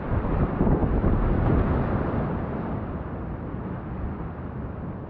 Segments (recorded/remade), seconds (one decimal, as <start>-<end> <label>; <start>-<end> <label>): 0.0-5.1 recorded